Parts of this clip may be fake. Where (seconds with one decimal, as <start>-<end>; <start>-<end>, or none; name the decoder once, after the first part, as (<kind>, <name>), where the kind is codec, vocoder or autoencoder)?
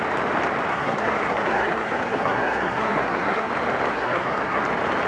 0.7-3.5 (codec, SNAC); 3.9-4.6